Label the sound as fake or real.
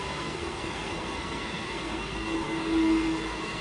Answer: fake